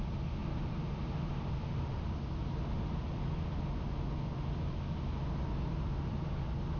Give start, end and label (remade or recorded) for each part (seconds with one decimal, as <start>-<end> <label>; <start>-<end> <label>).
0.0-6.8 recorded